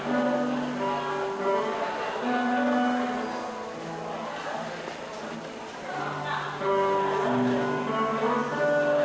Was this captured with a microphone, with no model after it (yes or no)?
yes